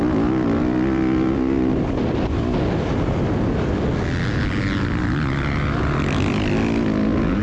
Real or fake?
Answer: real